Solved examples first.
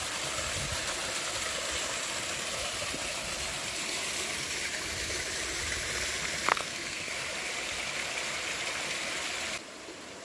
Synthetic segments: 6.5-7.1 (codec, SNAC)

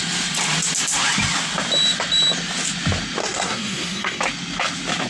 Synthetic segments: 3.2-4.2 (codec, SNAC)

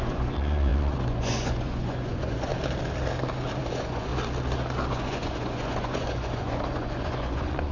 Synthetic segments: 0.0-2.5 (vocoder, Vocos); 3.6-4.1; 4.9-7.7